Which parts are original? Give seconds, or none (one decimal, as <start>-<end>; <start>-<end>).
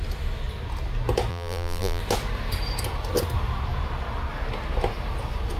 0.0-1.3; 2.0-5.6